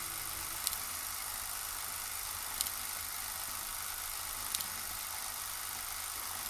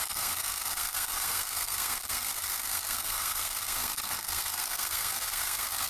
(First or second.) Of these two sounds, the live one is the first